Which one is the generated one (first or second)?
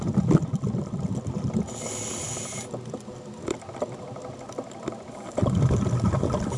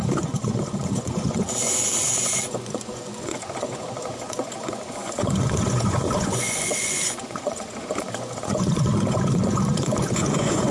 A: second